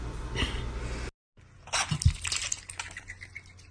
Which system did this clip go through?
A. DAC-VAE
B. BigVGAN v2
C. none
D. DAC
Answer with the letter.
C